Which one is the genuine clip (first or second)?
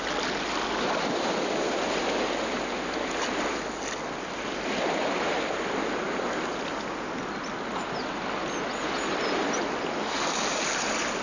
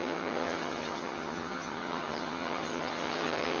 first